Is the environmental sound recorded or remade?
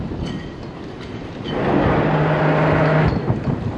recorded